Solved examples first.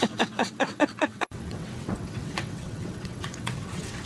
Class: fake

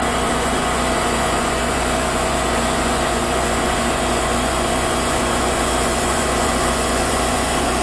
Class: fake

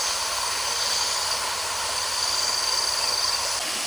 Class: real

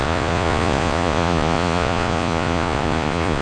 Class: fake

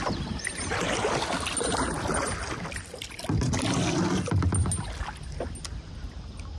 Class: real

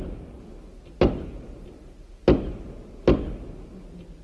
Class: real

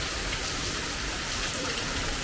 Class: fake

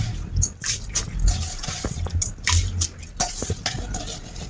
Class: real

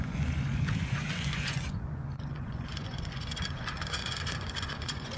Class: fake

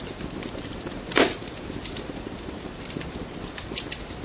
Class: real